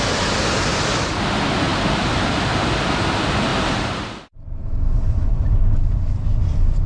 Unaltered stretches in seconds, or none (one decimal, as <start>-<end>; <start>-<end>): 0.0-1.7; 2.7-3.5; 5.5-6.9